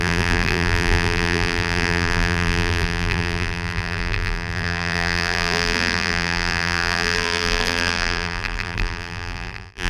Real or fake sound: fake